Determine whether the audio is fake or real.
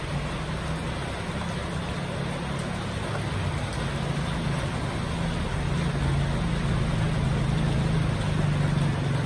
real